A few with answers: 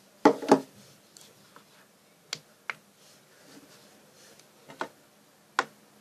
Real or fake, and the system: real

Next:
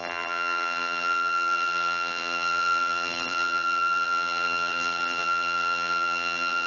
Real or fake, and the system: fake, vocoder, BigVGAN v2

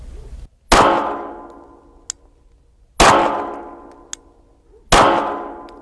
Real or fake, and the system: real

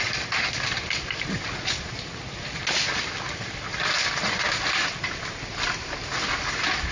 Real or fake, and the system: real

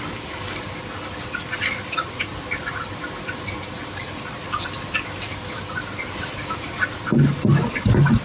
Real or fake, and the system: real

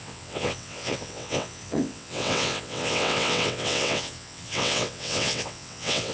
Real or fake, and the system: fake, vocoder, WaveNeXt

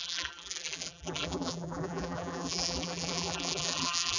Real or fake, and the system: fake, vocoder, BigVGAN v2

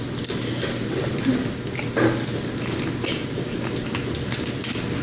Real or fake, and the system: real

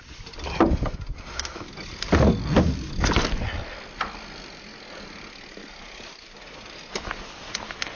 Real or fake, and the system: real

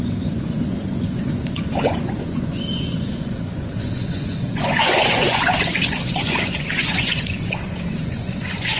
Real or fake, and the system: fake, vocoder, Vocos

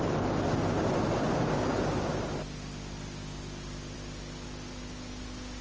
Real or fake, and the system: real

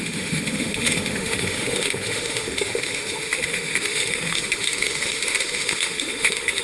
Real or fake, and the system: fake, autoencoder, DAC-VAE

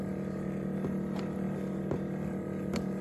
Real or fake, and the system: real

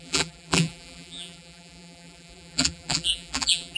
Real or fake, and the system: fake, vocoder, BigVGAN v2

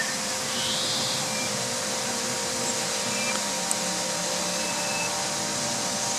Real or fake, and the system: real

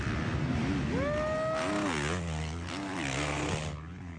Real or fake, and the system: real